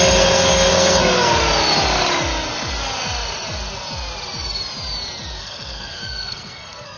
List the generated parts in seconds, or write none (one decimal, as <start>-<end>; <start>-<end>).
0.0-1.4; 5.4-7.0